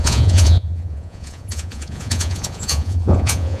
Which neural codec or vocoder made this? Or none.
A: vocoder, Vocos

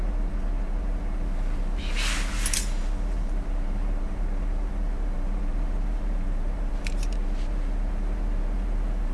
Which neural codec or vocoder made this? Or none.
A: vocoder, BigVGAN v2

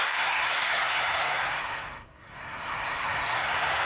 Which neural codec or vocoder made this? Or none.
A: codec, SNAC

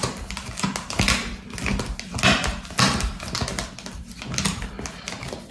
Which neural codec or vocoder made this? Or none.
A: none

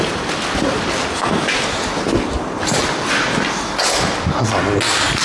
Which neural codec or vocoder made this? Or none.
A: none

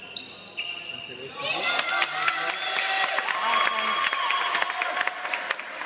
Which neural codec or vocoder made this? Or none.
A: none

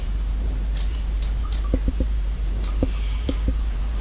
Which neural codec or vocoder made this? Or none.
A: vocoder, BigVGAN v2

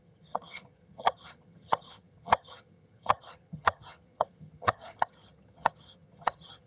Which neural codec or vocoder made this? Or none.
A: vocoder, HiFi-GAN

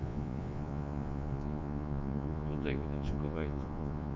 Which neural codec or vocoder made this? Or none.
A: vocoder, Vocos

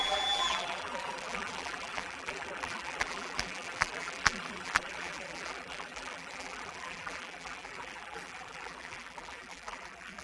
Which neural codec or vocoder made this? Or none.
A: vocoder, BigVGAN v2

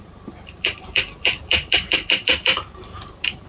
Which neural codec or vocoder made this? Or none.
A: vocoder, BigVGAN v2